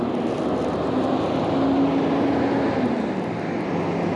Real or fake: real